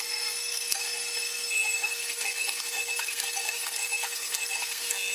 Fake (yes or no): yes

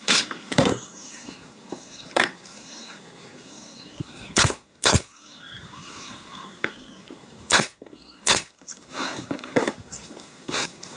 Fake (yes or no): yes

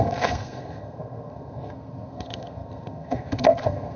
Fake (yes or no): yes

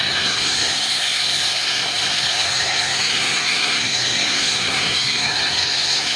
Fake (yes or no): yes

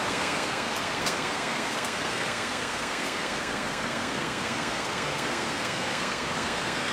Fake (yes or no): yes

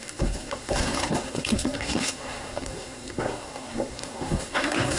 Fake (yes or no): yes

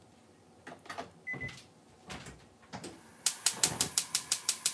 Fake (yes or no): no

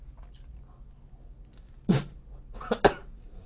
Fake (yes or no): no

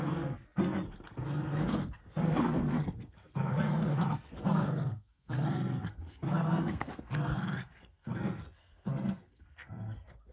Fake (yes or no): yes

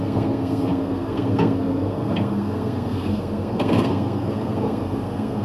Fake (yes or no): yes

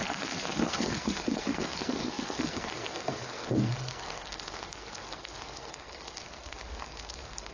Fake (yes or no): yes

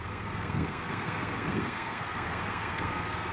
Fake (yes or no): yes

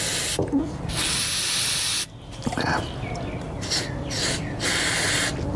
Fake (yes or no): no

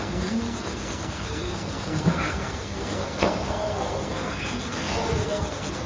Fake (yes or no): yes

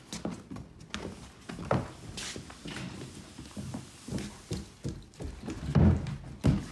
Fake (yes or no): no